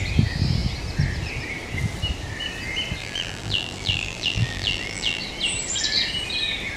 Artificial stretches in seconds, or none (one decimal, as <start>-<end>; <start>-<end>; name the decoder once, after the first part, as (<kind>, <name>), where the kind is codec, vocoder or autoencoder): 3.0-5.2 (vocoder, BigVGAN v2)